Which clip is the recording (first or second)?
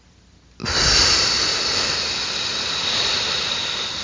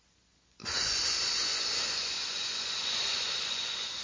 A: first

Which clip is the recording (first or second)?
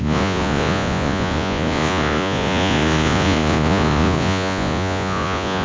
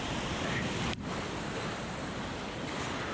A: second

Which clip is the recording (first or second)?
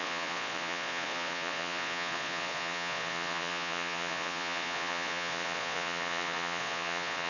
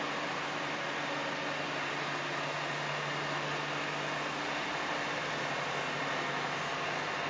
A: second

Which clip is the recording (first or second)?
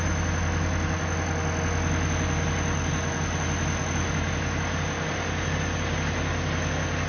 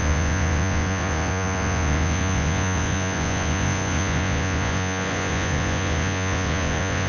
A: first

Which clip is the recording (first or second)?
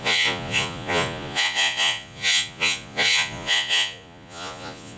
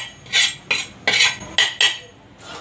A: second